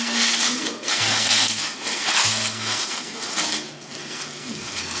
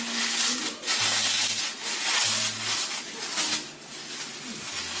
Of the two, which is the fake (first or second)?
first